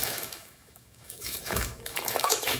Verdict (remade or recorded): remade